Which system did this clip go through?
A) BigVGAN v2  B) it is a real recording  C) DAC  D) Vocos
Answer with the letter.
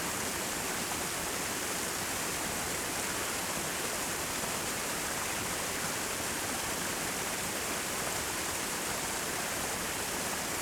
A